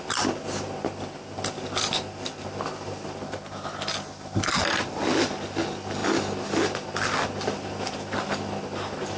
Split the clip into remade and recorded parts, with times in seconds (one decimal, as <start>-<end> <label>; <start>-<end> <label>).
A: 0.0-9.2 recorded